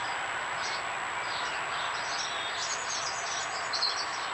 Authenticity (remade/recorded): recorded